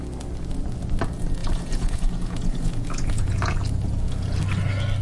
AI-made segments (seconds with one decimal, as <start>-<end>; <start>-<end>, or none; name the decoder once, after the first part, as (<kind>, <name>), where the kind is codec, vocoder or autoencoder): 1.4-4.4 (vocoder, Vocos)